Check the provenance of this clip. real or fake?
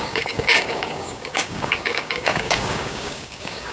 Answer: fake